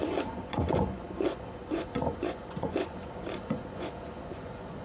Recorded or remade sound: remade